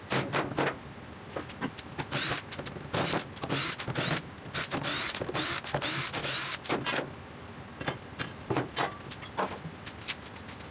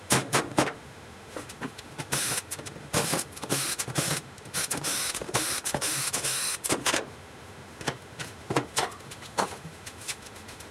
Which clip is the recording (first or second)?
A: first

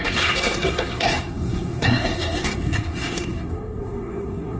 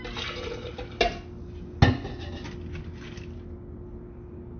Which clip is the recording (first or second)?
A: second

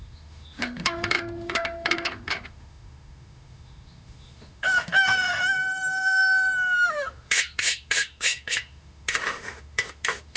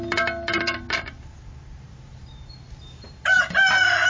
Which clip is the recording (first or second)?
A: second